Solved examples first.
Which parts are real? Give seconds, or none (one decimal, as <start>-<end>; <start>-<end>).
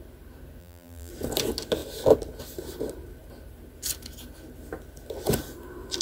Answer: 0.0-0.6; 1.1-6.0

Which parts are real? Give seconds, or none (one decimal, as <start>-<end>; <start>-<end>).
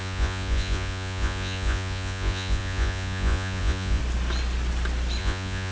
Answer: 4.0-5.2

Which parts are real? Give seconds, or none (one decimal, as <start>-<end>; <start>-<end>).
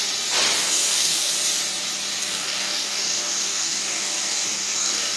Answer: 0.0-0.6; 1.3-2.2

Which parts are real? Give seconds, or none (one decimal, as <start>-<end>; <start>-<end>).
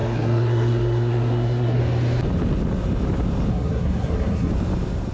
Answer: 1.8-3.5; 4.5-5.1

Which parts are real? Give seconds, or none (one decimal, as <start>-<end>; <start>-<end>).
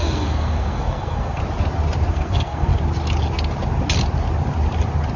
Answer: 1.4-2.1; 2.7-5.2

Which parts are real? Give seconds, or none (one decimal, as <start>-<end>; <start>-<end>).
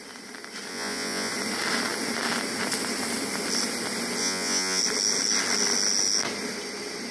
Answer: 0.0-0.7; 1.3-4.2; 4.8-7.1